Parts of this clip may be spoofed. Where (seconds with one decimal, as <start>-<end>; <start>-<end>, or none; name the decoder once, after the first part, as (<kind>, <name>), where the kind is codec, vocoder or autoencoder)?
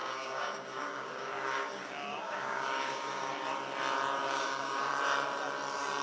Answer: 0.0-3.3 (codec, DAC); 4.2-4.9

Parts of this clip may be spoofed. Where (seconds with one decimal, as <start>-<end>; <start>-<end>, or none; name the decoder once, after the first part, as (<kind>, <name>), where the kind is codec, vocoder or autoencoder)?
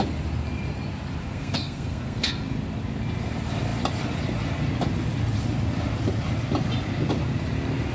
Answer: 1.2-2.3 (codec, SNAC)